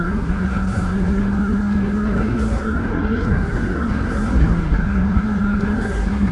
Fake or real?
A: fake